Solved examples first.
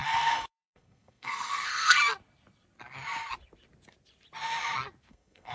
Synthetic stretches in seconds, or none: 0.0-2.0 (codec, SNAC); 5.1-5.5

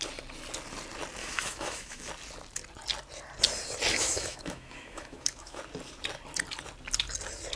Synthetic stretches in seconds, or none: 1.2-2.1 (autoencoder, DAC-VAE); 3.9-5.6

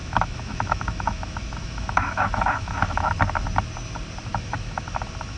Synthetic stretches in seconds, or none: 0.0-3.2 (autoencoder, DAC-VAE); 4.3-4.9